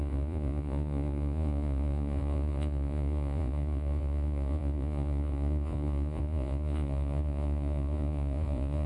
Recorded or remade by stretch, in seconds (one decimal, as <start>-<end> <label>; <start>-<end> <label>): 0.0-8.9 remade